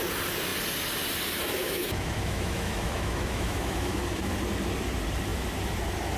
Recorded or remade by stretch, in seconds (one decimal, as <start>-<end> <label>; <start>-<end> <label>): 0.0-1.6 recorded; 1.6-4.3 remade; 4.3-6.2 recorded